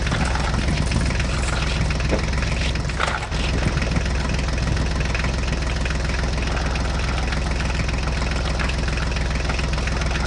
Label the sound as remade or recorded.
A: recorded